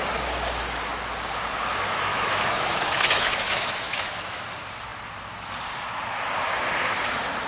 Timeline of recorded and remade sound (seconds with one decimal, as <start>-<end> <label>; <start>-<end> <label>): 0.0-2.1 recorded; 2.1-4.4 remade; 4.4-7.5 recorded